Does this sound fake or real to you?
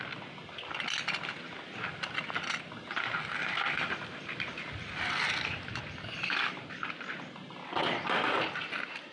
real